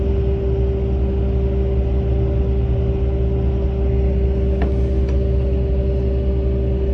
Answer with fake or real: real